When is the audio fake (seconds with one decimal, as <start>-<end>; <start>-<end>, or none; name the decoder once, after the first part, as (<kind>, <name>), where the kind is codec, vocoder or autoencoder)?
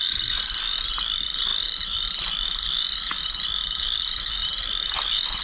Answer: none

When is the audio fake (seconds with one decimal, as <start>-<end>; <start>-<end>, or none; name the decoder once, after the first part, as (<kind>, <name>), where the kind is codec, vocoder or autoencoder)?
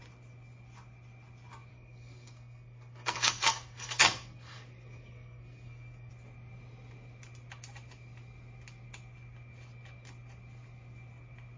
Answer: 1.7-6.1 (codec, SNAC)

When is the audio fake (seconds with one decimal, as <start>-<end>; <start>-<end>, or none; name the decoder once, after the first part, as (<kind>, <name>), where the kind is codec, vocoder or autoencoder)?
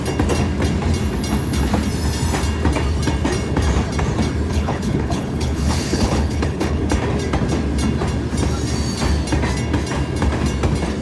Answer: 4.5-6.8 (codec, HILCodec)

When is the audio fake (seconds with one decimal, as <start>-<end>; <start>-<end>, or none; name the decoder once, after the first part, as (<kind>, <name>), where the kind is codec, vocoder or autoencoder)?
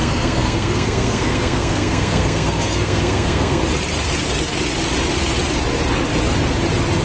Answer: 0.0-3.6 (codec, SNAC)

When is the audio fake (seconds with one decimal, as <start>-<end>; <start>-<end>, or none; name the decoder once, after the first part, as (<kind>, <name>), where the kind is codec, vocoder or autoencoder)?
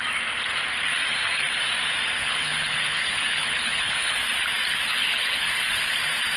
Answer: 2.2-4.2 (codec, HILCodec); 4.9-5.7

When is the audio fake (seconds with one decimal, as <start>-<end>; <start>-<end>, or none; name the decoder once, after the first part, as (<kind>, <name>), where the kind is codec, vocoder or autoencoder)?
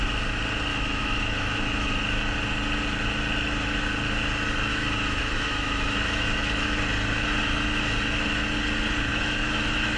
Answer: 0.7-1.9 (autoencoder, DAC-VAE); 4.7-6.8; 9.1-10.0